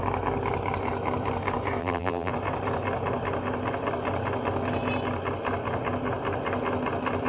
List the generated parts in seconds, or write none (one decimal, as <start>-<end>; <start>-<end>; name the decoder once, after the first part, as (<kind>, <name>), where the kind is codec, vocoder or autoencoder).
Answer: 1.8-2.3 (vocoder, BigVGAN v2)